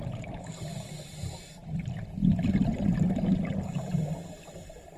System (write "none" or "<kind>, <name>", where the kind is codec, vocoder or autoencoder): vocoder, BigVGAN v2